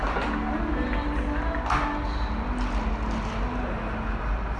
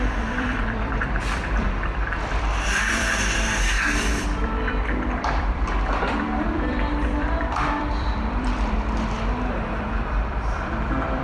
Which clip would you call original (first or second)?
first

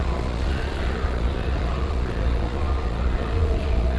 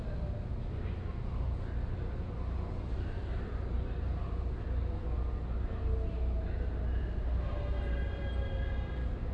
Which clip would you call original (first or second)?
second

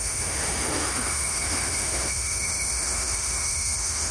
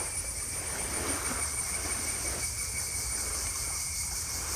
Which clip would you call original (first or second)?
second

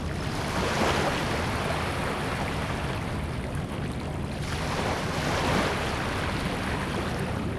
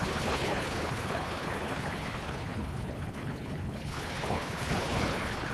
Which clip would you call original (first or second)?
first